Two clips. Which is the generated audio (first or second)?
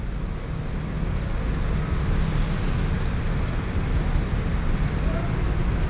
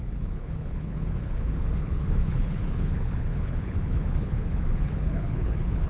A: second